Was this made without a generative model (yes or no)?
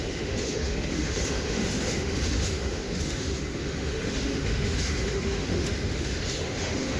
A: no